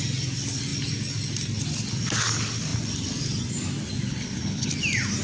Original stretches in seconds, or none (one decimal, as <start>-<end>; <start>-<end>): 0.0-4.1; 4.7-5.2